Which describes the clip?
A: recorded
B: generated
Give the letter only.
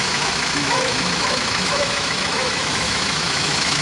B